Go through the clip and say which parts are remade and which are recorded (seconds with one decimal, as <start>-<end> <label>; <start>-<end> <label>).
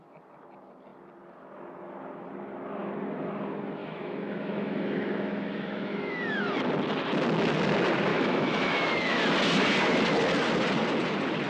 0.0-3.8 recorded; 3.8-6.4 remade; 6.4-8.1 recorded; 8.1-9.2 remade; 9.2-11.5 recorded